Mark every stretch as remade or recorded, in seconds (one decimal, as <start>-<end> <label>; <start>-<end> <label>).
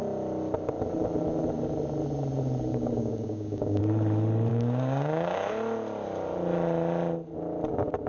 0.0-2.7 recorded; 2.7-3.8 remade; 3.8-4.5 recorded; 4.5-5.5 remade; 5.5-8.1 recorded